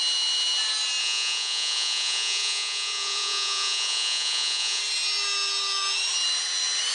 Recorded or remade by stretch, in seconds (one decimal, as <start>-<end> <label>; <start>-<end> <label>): 0.0-1.0 recorded; 1.0-4.8 remade; 4.8-6.9 recorded